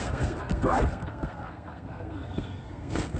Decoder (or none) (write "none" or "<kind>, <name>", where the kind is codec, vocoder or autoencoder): codec, SNAC